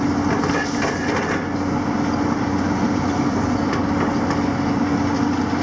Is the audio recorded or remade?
recorded